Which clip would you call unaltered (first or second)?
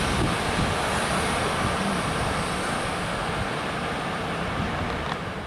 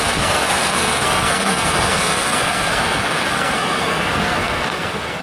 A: first